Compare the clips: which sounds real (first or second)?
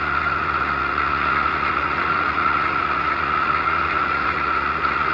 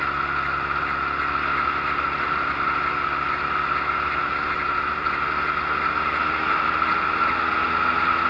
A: second